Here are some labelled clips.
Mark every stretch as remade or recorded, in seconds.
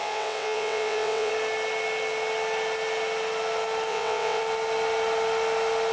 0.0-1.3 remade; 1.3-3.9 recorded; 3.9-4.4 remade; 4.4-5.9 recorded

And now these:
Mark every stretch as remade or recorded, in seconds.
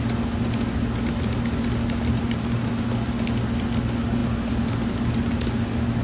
0.0-6.0 recorded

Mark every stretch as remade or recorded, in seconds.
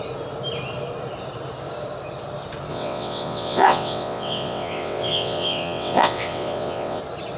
0.0-2.7 recorded; 2.7-7.0 remade; 7.0-7.4 recorded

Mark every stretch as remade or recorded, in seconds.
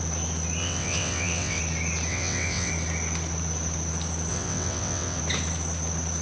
0.0-0.6 recorded; 0.6-1.6 remade; 1.6-2.1 recorded; 2.1-2.7 remade; 2.7-4.3 recorded; 4.3-5.2 remade; 5.2-6.2 recorded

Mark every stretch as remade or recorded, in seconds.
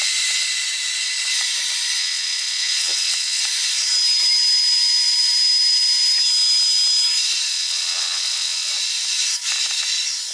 0.0-2.0 recorded; 2.0-3.4 remade; 3.4-7.5 recorded; 7.5-8.7 remade; 8.7-10.3 recorded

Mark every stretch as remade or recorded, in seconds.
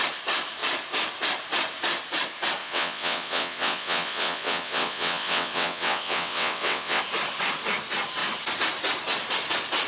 0.0-2.6 recorded; 2.6-7.0 remade; 7.0-9.9 recorded